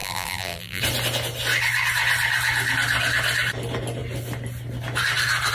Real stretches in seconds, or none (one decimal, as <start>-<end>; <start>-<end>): 0.8-5.5